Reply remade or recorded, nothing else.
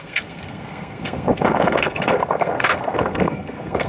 remade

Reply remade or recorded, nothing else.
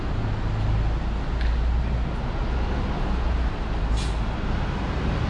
recorded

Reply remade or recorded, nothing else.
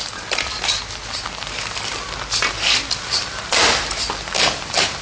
recorded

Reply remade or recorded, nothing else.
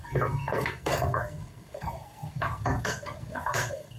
remade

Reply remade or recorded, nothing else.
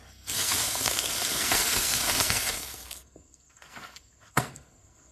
remade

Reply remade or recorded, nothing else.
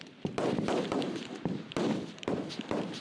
recorded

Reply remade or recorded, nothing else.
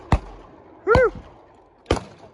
recorded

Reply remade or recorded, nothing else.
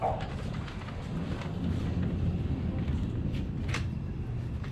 recorded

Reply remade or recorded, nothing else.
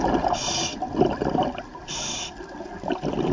recorded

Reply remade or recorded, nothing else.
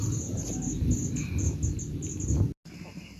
recorded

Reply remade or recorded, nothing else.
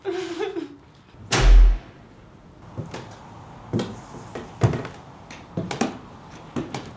recorded